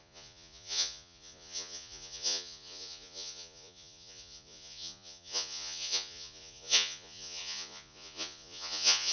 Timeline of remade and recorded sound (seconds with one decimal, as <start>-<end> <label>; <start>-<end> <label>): 0.0-9.1 remade